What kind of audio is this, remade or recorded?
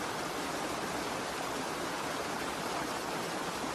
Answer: recorded